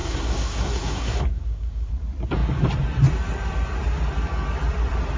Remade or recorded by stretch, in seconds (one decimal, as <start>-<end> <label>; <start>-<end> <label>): 0.0-1.9 remade; 1.9-5.2 recorded